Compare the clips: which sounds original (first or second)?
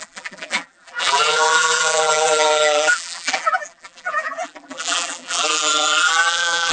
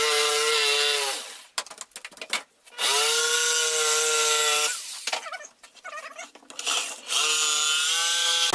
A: second